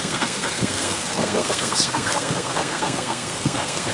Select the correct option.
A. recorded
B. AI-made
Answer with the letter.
B